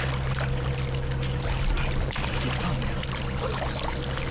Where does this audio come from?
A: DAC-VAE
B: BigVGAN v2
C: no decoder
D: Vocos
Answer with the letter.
C